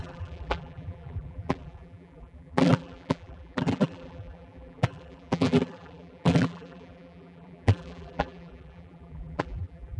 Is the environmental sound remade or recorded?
remade